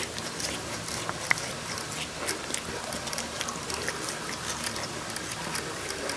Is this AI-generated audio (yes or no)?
no